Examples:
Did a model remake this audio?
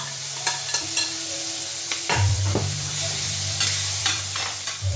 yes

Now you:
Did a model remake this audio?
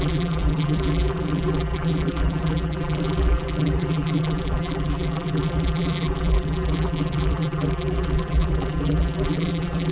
yes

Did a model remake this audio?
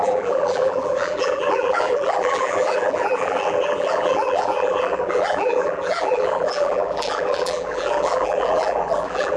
yes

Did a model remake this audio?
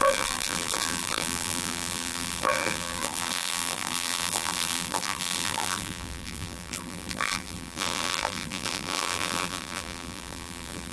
yes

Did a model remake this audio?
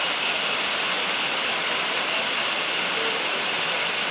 no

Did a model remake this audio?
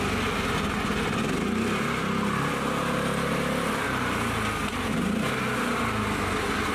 no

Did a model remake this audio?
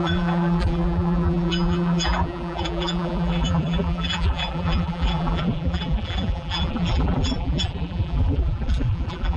yes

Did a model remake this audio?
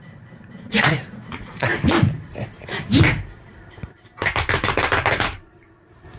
yes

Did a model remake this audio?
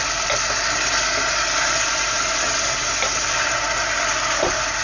no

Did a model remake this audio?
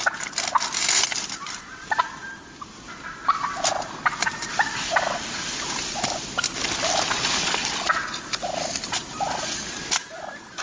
yes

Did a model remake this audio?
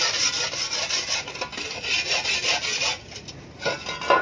no